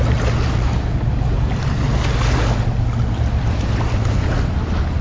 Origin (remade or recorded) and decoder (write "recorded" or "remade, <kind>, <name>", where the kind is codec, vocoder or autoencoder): recorded